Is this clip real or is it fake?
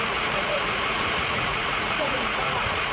fake